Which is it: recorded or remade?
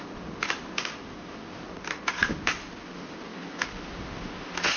recorded